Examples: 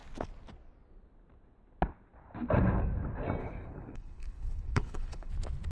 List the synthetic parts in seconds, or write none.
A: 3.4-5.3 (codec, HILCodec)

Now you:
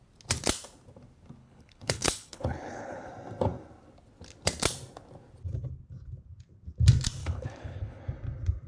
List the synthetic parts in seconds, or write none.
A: 1.4-3.1 (codec, HILCodec); 7.2-8.0

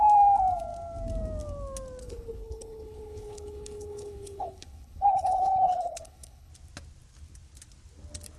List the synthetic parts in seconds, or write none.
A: 2.0-6.5 (codec, HILCodec)